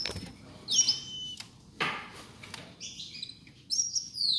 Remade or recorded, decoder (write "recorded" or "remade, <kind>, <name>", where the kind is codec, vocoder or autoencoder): recorded